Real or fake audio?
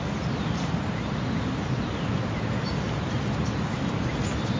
real